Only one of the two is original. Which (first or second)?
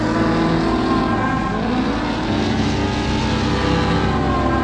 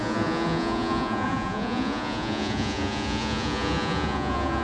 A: first